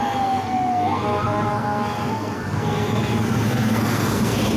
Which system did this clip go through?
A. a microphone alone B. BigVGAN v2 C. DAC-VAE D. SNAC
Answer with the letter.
D